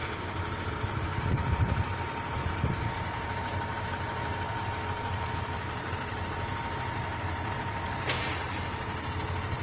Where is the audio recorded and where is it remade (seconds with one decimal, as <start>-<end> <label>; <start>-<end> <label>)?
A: 0.0-0.7 remade; 0.7-1.3 recorded; 1.3-6.1 remade; 6.1-8.4 recorded; 8.4-9.0 remade; 9.0-9.6 recorded